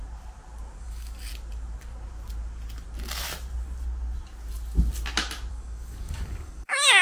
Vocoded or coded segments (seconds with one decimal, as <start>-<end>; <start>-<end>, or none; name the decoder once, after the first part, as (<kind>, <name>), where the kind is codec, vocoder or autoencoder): 0.8-1.3 (codec, DAC); 5.5-7.0

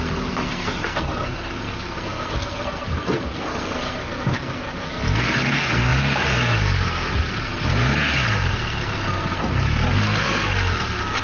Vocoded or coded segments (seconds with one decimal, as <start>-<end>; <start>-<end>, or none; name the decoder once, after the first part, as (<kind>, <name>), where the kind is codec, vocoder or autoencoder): 0.0-11.2 (codec, SNAC)

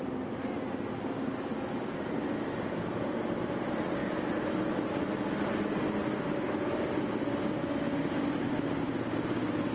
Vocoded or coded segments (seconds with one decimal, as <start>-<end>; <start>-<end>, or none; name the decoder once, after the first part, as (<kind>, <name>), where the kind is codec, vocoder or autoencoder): none

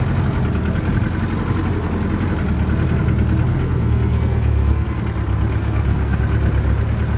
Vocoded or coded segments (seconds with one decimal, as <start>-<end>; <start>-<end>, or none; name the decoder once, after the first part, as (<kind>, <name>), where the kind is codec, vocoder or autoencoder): 3.5-5.0 (codec, SNAC); 5.6-6.2

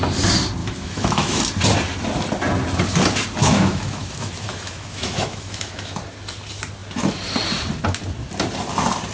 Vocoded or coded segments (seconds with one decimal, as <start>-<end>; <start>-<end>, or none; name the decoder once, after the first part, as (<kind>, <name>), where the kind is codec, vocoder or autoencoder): 0.6-1.4 (autoencoder, DAC-VAE); 3.4-6.0

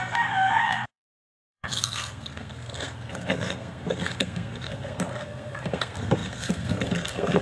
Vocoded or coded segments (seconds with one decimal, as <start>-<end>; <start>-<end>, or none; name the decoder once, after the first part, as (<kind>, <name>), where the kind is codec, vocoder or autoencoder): 0.0-7.4 (codec, SNAC)

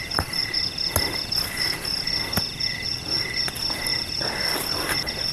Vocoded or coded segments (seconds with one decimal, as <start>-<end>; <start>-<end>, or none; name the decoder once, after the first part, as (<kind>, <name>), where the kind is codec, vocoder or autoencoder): none